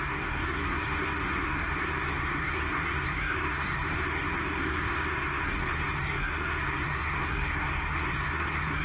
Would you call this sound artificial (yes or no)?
yes